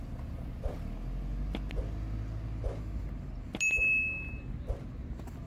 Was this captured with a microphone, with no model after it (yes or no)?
yes